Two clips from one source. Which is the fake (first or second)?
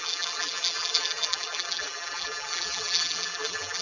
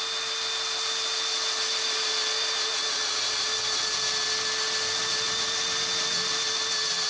first